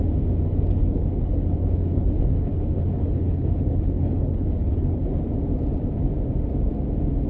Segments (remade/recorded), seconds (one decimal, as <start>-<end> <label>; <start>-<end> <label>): 0.0-0.8 recorded; 0.8-5.2 remade; 5.2-7.3 recorded